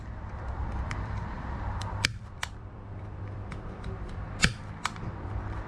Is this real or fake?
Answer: fake